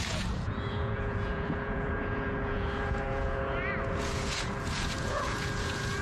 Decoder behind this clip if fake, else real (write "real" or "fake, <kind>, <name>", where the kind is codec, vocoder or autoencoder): fake, vocoder, Vocos